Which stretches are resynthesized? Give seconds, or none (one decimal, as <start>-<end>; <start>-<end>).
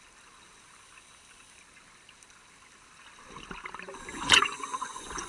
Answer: 4.1-5.3